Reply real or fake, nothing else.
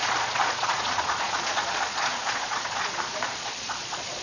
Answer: fake